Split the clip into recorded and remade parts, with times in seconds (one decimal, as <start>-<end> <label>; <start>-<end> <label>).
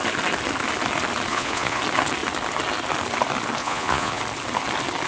0.0-1.3 recorded; 1.3-1.8 remade; 1.8-3.6 recorded; 3.6-4.2 remade; 4.2-5.1 recorded